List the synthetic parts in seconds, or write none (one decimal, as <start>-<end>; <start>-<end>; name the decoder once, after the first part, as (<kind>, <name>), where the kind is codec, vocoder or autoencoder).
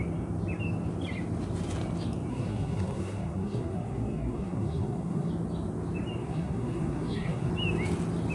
2.3-5.3 (codec, SNAC); 6.2-7.5